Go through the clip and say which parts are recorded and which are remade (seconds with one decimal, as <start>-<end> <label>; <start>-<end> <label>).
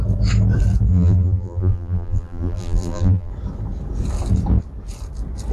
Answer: 0.0-0.9 recorded; 0.9-3.3 remade; 3.3-5.5 recorded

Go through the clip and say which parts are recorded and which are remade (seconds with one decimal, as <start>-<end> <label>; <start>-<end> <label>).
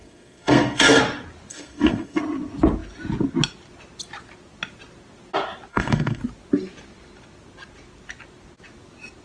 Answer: 0.0-1.0 remade; 1.0-1.5 recorded; 1.5-2.2 remade; 2.2-5.7 recorded; 5.7-6.2 remade; 6.2-9.2 recorded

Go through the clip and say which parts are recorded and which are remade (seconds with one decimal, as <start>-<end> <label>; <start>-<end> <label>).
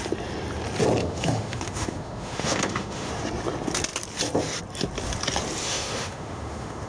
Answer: 0.0-1.0 recorded; 1.0-3.1 remade; 3.1-5.6 recorded; 5.6-6.9 remade